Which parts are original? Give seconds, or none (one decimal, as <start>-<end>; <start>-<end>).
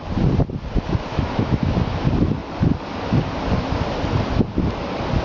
0.0-1.1; 2.0-5.2